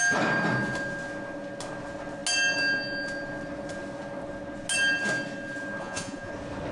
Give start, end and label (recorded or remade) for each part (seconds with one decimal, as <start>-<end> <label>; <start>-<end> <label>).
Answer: 0.0-5.8 recorded; 5.8-6.3 remade; 6.3-6.7 recorded